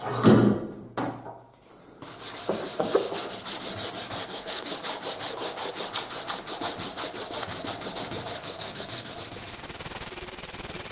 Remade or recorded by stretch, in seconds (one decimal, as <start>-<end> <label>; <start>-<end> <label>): 0.0-4.2 recorded; 4.2-4.7 remade; 4.7-8.4 recorded; 8.4-9.1 remade; 9.1-10.9 recorded